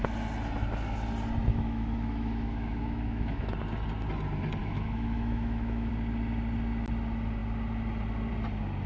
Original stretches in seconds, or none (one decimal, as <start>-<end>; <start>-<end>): 0.0-1.5; 3.5-4.6; 5.9-8.9